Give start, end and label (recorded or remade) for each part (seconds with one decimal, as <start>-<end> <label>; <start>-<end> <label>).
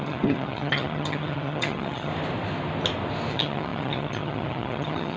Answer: 0.0-2.1 remade; 2.1-3.3 recorded; 3.3-5.2 remade